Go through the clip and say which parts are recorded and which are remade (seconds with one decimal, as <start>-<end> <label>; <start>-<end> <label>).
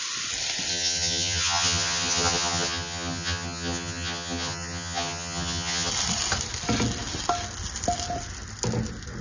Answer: 0.0-0.7 recorded; 0.7-5.9 remade; 5.9-9.2 recorded